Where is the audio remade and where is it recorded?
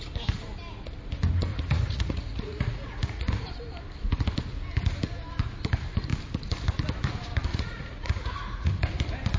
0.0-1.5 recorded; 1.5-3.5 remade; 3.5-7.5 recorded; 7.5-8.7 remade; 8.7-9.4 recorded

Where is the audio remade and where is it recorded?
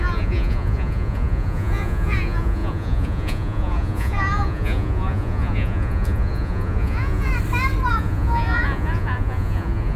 0.0-7.3 remade; 7.3-7.9 recorded; 7.9-10.0 remade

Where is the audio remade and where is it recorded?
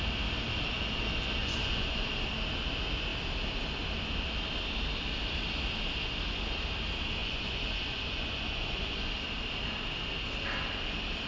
0.0-1.4 recorded; 1.4-2.1 remade; 2.1-7.2 recorded; 7.2-9.1 remade; 9.1-11.3 recorded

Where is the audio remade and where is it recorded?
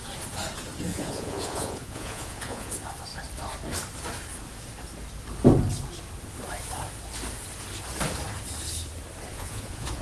0.0-0.9 recorded; 0.9-2.7 remade; 2.7-9.3 recorded; 9.3-10.0 remade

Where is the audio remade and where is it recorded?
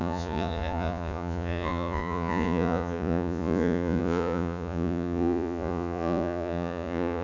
0.0-7.2 remade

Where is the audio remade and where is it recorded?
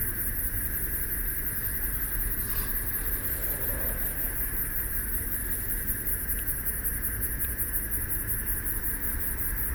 0.0-1.2 remade; 1.2-6.1 recorded; 6.1-7.7 remade; 7.7-9.7 recorded